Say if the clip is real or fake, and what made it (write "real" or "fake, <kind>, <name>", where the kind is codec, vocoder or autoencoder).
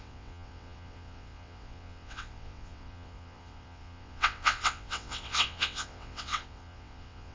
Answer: fake, vocoder, WaveNeXt